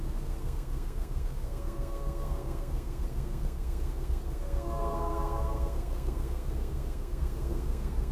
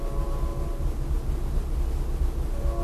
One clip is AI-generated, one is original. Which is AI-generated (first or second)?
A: first